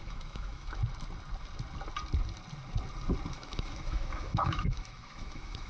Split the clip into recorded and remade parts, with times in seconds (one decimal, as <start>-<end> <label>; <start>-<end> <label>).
0.0-0.8 remade; 0.8-3.3 recorded; 3.3-5.7 remade